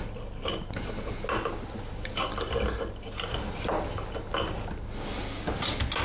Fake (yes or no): no